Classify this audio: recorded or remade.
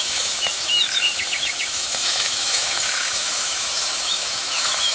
remade